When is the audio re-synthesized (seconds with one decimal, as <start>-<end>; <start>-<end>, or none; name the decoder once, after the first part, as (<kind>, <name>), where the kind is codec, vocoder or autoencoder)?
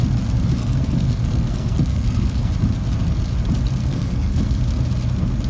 0.6-2.5 (codec, SNAC); 3.8-4.6